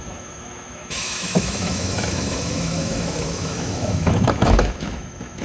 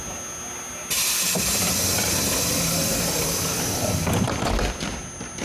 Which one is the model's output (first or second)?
first